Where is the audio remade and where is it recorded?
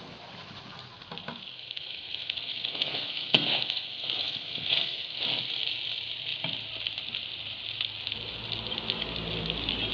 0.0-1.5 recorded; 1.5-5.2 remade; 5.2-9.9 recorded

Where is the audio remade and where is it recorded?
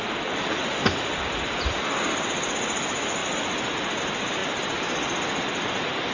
0.0-6.1 recorded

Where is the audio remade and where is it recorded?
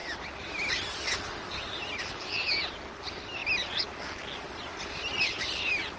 0.0-6.0 recorded